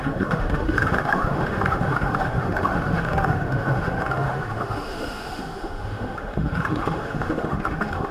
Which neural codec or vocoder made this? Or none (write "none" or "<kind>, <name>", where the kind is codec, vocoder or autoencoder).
autoencoder, DAC-VAE